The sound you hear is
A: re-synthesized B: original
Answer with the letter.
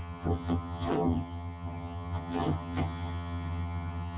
A